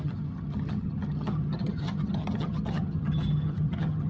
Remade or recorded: remade